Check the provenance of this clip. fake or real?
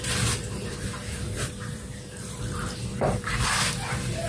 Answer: fake